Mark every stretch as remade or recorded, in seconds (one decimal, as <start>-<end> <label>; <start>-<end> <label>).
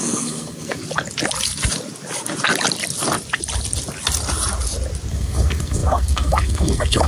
0.0-0.8 remade; 0.8-5.1 recorded; 5.1-7.1 remade